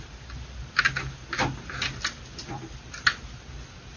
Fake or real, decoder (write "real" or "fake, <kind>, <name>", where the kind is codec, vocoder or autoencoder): real